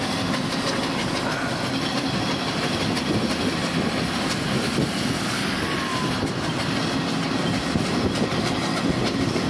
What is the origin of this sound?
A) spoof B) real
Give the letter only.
B